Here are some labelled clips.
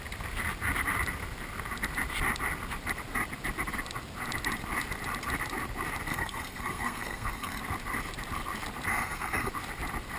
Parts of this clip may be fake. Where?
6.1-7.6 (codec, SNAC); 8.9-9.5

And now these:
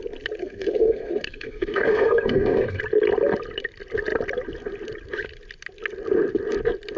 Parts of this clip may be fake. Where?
0.4-2.8 (codec, SNAC)

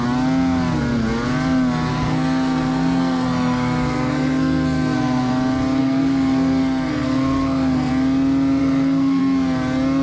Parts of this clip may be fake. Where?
1.9-5.3 (codec, SNAC); 5.8-7.9; 8.6-9.2

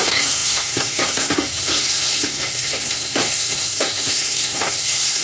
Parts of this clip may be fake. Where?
0.0-5.2 (codec, SNAC)

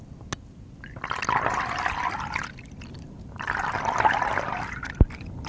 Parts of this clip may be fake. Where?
none